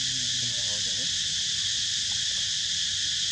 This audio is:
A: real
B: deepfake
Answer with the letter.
A